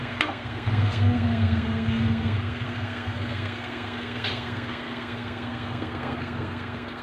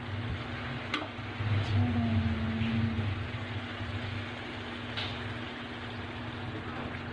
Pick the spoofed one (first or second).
first